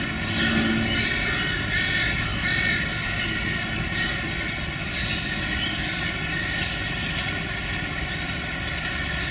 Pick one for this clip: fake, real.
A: real